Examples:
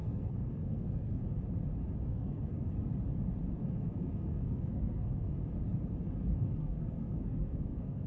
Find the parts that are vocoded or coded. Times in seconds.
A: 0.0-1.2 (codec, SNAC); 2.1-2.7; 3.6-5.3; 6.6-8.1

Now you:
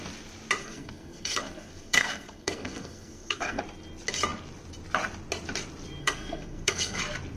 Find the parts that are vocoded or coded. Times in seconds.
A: 0.6-3.6 (codec, SNAC); 6.0-7.0

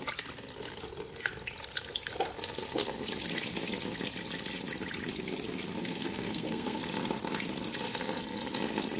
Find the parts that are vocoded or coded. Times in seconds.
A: 5.8-6.8 (codec, SNAC)

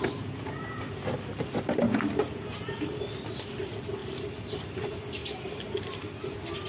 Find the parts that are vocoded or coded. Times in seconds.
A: none

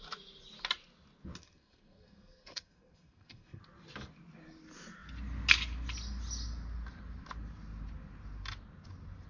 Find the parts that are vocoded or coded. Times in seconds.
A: 1.4-3.6 (codec, SNAC)